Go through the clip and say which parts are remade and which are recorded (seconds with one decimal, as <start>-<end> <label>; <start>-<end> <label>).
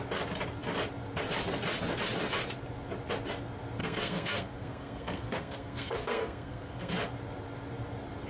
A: 0.0-3.8 recorded; 3.8-6.9 remade; 6.9-8.3 recorded